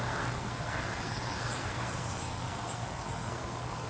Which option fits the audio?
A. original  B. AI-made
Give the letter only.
B